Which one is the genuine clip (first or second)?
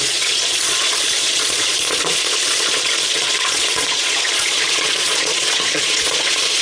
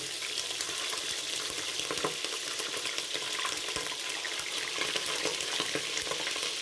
second